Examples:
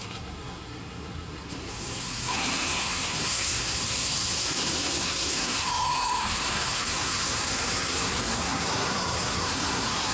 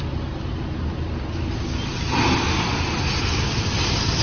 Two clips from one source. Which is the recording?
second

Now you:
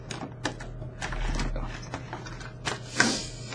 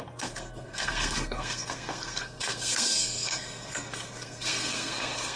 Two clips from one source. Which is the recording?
first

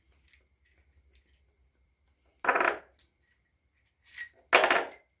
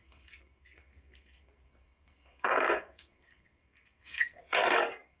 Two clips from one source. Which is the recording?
first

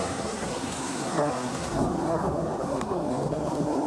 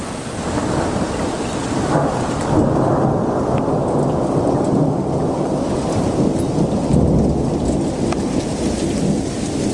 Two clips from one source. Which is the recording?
second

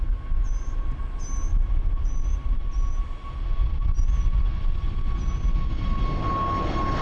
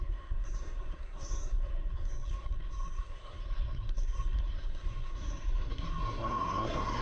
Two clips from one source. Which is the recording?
first